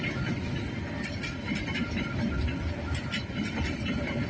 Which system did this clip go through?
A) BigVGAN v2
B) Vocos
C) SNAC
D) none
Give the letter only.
D